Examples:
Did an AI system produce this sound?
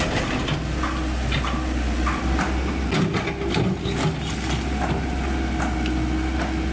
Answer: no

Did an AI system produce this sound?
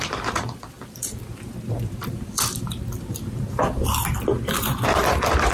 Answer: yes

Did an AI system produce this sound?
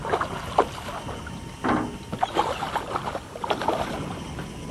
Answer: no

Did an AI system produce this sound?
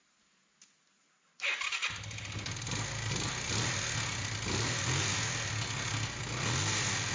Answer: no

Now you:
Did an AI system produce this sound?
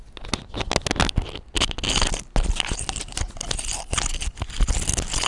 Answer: no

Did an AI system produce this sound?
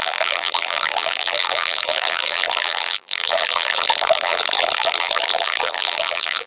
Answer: yes